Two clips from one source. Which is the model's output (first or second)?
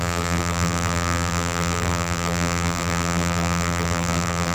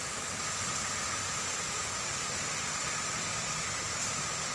first